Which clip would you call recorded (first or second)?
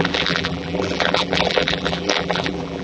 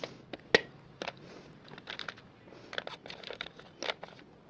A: second